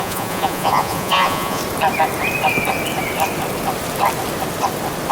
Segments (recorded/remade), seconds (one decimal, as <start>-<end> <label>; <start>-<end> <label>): 0.0-1.6 remade; 1.6-5.1 recorded